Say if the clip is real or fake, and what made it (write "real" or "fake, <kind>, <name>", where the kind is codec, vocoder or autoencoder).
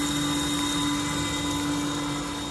real